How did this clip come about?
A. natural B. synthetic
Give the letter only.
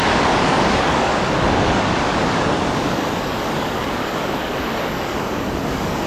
B